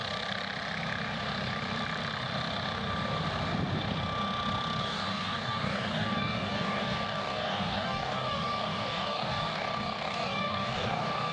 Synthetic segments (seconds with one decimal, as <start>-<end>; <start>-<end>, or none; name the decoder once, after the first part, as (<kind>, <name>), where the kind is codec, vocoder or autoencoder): 4.8-11.3 (codec, DAC)